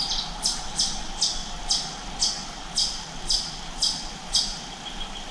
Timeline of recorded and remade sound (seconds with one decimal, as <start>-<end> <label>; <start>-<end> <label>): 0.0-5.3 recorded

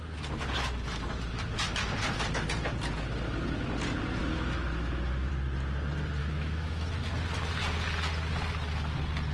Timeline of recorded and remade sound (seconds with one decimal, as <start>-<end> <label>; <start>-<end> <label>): 0.0-4.2 recorded; 4.2-5.3 remade; 5.3-6.2 recorded; 6.2-6.9 remade; 6.9-9.3 recorded

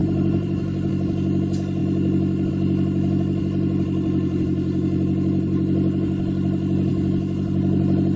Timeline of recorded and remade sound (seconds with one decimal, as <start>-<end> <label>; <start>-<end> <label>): 0.0-0.9 remade; 0.9-8.2 recorded

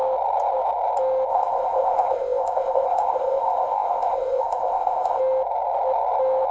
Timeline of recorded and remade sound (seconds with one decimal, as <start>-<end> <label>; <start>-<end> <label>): 0.0-1.3 recorded; 1.3-5.2 remade; 5.2-6.5 recorded

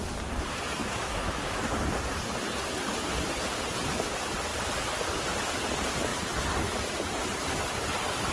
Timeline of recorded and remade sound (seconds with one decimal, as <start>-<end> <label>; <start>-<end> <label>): 0.0-0.8 recorded; 0.8-1.6 remade; 1.6-8.3 recorded

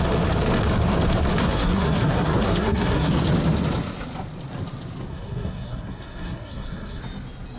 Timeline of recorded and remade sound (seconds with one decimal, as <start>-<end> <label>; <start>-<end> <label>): 0.0-1.4 recorded; 1.4-3.1 remade; 3.1-5.1 recorded; 5.1-7.0 remade; 7.0-7.6 recorded

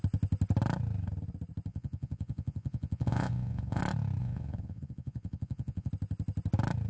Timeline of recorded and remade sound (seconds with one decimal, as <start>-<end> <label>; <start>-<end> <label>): 0.0-1.7 recorded; 1.7-3.8 remade; 3.8-4.2 recorded; 4.2-5.9 remade; 5.9-6.9 recorded